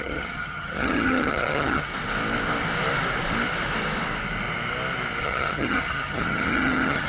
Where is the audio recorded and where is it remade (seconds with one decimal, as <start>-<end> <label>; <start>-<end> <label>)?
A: 0.0-1.9 remade; 1.9-5.2 recorded; 5.2-7.1 remade